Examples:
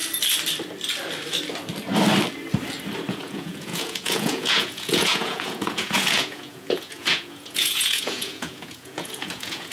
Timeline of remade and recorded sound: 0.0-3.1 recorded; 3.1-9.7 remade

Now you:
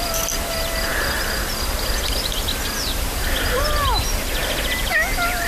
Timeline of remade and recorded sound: 0.0-5.5 recorded

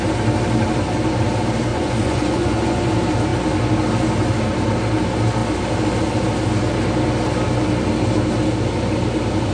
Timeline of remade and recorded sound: 0.0-1.7 recorded; 1.7-2.9 remade; 2.9-9.5 recorded

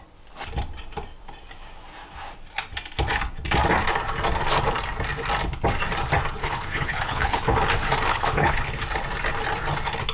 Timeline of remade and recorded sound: 0.0-6.4 recorded; 6.4-7.4 remade; 7.4-8.1 recorded; 8.1-8.7 remade; 8.7-10.1 recorded

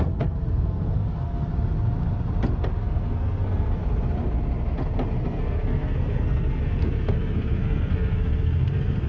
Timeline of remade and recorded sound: 0.0-1.5 remade; 1.5-2.8 recorded; 2.8-3.8 remade; 3.8-5.2 recorded; 5.2-9.1 remade

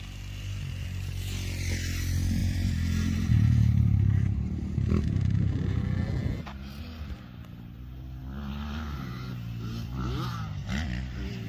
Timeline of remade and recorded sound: 0.0-2.4 recorded; 2.4-5.8 remade; 5.8-11.5 recorded